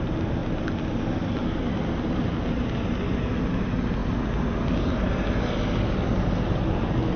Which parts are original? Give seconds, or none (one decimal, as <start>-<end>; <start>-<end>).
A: 0.0-7.2